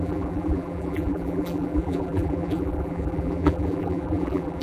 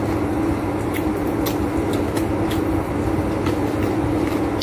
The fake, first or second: first